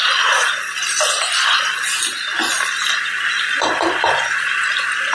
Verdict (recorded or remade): recorded